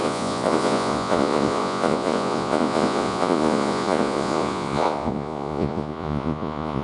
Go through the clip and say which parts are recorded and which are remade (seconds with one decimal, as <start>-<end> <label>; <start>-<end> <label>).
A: 0.0-6.8 remade